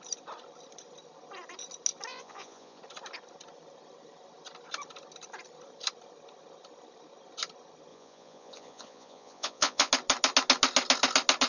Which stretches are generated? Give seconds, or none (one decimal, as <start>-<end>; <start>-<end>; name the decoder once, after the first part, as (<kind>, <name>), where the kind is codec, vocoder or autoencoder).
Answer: 2.1-2.8 (vocoder, Vocos); 7.9-9.9

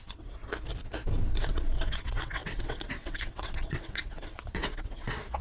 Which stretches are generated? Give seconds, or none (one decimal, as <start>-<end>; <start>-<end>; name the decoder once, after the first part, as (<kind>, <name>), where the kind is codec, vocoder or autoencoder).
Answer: 0.0-0.4 (vocoder, WaveNeXt); 1.4-5.4

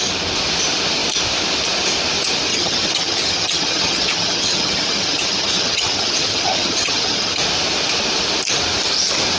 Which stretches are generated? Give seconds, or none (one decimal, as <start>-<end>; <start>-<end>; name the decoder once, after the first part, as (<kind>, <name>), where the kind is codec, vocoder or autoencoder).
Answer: 2.5-7.4 (vocoder, HiFi-GAN)

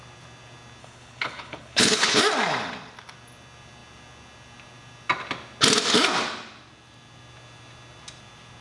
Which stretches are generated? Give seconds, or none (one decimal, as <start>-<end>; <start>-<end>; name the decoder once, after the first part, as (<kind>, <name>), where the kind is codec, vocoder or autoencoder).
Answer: 0.8-2.2 (codec, HILCodec)

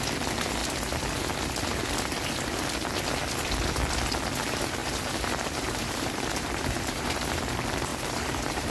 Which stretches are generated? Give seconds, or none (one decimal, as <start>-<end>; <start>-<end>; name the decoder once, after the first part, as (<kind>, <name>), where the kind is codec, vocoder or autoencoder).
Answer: 4.8-7.4 (vocoder, BigVGAN v2); 7.9-8.7

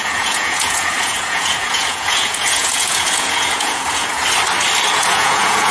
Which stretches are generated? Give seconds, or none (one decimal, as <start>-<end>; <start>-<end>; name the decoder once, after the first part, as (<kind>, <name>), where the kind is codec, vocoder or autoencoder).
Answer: 0.0-4.2 (vocoder, Vocos); 4.9-5.7

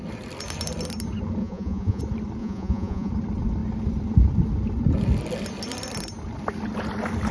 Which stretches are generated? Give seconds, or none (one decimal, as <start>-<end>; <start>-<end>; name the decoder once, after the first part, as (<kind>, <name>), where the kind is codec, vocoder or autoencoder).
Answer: 1.4-2.0 (vocoder, Vocos); 2.4-3.1

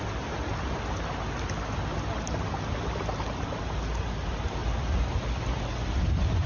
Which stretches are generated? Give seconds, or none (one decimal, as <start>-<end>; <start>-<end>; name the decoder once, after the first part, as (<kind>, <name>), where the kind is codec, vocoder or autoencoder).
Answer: none